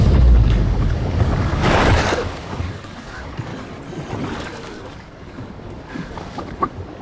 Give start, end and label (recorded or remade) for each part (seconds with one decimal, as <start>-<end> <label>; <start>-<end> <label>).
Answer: 0.0-3.5 remade; 3.5-4.4 recorded; 4.4-7.0 remade